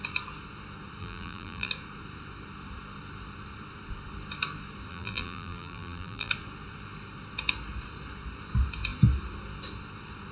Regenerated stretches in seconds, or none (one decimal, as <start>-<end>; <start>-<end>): 1.0-1.7; 4.9-6.3